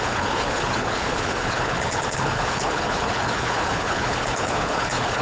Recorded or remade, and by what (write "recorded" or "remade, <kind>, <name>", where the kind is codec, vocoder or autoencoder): remade, codec, HILCodec